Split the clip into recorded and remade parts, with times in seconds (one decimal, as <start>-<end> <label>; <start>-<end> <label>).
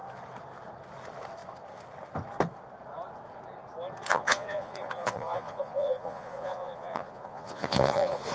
0.0-4.1 recorded; 4.1-8.3 remade